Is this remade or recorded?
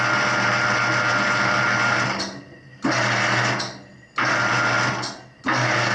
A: recorded